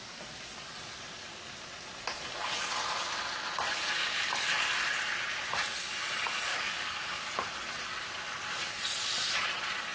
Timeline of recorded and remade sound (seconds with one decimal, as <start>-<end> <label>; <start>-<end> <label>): 0.0-6.5 recorded; 6.5-7.2 remade; 7.2-9.9 recorded